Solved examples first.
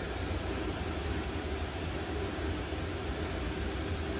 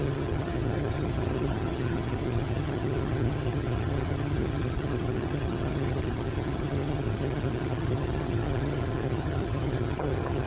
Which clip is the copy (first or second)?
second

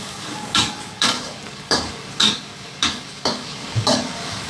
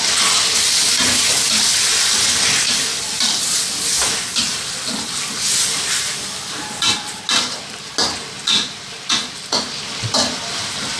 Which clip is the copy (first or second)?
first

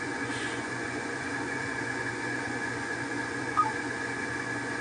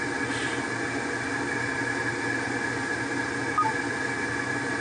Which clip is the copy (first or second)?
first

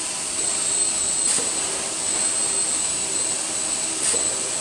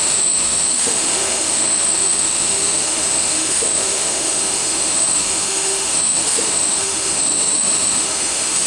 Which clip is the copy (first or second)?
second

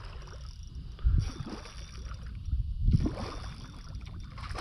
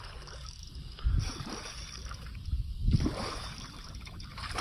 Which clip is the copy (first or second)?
second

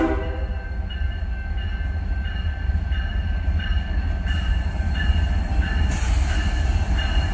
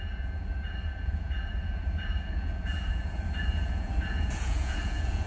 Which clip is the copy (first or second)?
second